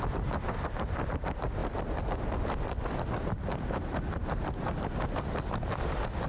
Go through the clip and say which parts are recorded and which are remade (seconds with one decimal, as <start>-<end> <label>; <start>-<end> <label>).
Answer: 0.0-6.3 recorded